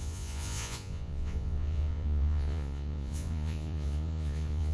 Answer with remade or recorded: remade